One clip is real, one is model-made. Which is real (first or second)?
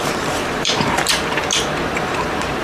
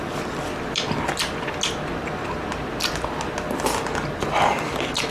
second